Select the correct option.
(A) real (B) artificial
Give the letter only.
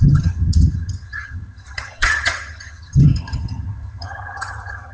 B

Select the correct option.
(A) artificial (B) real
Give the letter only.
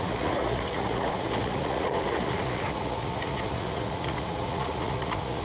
A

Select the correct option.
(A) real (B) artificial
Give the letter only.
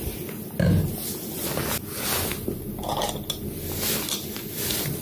A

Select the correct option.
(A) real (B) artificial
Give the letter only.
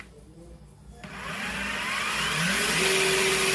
A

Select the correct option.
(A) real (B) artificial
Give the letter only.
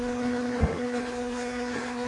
B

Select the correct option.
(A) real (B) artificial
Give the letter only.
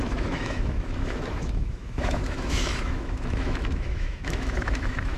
B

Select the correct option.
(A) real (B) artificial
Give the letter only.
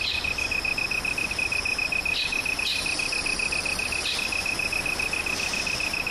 A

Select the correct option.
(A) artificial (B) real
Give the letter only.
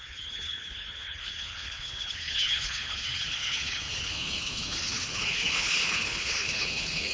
A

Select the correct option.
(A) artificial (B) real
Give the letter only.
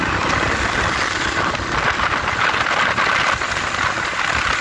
B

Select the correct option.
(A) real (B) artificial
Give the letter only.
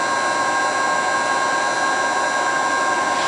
A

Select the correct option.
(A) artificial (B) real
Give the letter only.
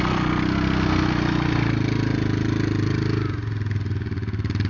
B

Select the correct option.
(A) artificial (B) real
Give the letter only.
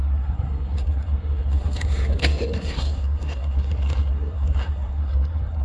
A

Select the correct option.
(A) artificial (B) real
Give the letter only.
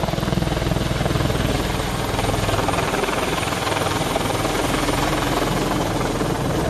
B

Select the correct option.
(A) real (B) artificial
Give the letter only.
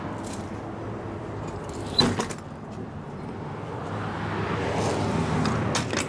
A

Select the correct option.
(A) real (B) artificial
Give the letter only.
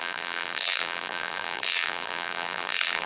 B